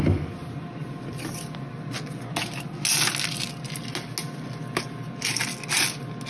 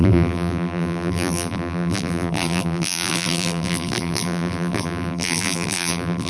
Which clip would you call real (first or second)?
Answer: first